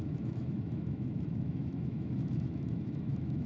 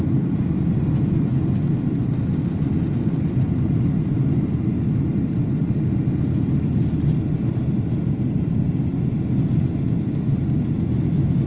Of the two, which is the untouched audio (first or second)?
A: second